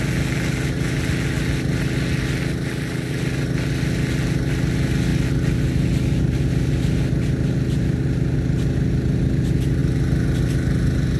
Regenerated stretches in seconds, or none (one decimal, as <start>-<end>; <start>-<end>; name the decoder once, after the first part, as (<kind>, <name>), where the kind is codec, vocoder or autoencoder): none